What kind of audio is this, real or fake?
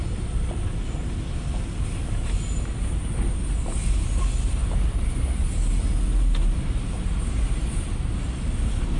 real